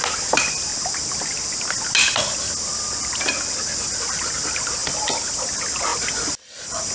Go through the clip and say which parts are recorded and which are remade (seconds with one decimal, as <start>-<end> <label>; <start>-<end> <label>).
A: 0.0-4.8 recorded; 4.8-5.5 remade; 5.5-5.9 recorded; 5.9-6.9 remade